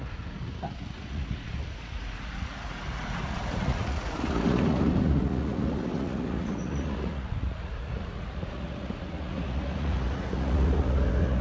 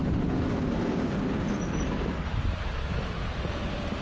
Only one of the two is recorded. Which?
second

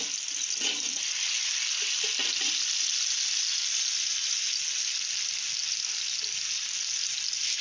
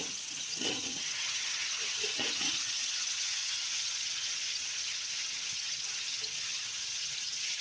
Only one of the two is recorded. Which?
first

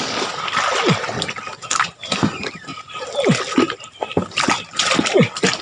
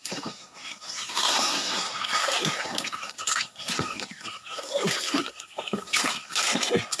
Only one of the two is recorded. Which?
first